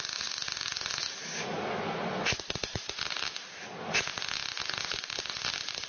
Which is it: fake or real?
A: real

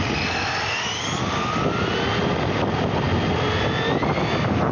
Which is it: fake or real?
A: real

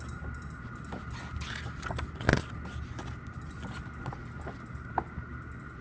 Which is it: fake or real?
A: real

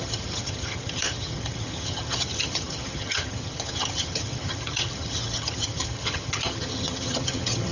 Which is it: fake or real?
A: fake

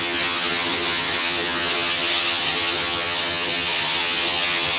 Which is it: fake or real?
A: fake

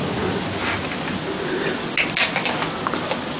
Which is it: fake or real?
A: real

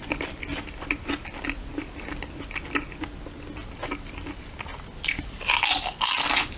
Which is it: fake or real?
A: real